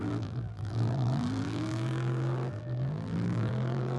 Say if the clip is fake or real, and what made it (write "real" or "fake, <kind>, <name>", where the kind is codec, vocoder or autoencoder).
fake, vocoder, BigVGAN v2